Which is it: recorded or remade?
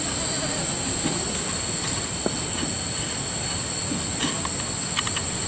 recorded